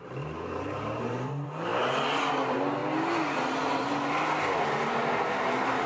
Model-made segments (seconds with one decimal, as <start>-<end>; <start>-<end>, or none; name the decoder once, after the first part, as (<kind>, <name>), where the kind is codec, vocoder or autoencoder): 0.0-1.7 (vocoder, BigVGAN v2); 2.3-2.8; 4.6-5.9